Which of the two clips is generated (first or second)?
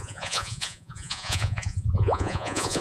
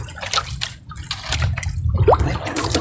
first